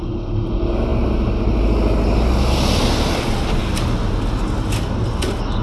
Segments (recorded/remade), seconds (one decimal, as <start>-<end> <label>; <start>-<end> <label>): 0.0-5.6 recorded